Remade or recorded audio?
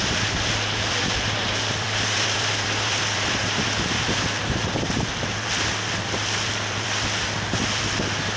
remade